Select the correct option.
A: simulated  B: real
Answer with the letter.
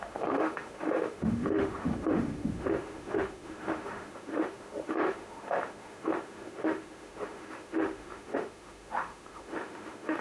A